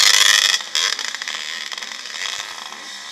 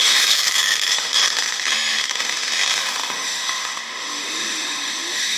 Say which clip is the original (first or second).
first